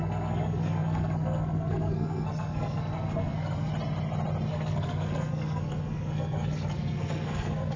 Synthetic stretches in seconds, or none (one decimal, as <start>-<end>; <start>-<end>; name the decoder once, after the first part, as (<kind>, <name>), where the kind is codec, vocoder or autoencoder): 0.0-3.7 (codec, SNAC); 4.5-7.8